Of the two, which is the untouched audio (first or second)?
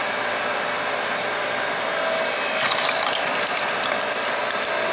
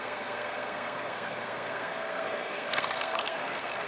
first